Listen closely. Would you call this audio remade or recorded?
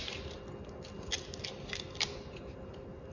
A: recorded